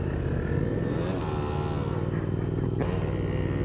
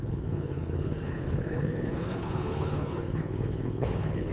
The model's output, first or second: second